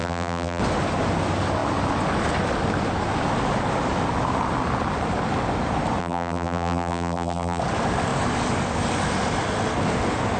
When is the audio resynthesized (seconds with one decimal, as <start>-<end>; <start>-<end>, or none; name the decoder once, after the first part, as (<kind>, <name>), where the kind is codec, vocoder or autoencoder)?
0.0-0.6 (vocoder, BigVGAN v2); 6.0-7.6